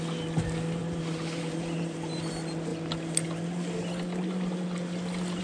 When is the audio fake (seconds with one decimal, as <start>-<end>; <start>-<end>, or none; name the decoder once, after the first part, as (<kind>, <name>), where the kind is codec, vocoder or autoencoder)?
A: 0.8-2.3 (vocoder, BigVGAN v2)